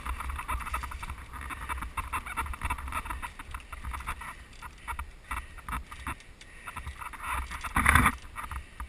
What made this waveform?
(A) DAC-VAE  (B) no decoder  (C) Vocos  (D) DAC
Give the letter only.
B